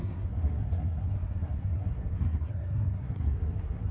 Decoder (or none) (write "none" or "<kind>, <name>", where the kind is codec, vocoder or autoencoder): codec, SNAC